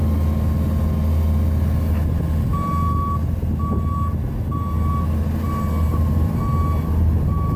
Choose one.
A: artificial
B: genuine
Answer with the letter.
B